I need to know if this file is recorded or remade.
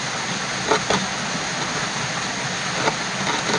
recorded